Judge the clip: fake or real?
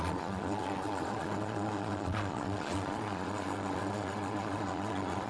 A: fake